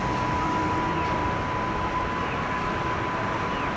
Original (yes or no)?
yes